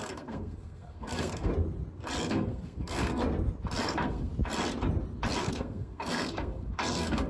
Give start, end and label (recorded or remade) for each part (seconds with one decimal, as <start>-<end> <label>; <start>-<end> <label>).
0.0-1.5 remade; 1.5-2.2 recorded; 2.2-3.2 remade; 3.2-3.8 recorded; 3.8-4.3 remade; 4.3-5.4 recorded; 5.4-7.3 remade

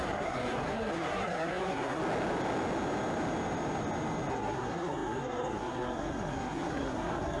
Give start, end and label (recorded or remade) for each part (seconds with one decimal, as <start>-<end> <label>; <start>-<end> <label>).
0.0-2.0 remade; 2.0-4.3 recorded; 4.3-7.4 remade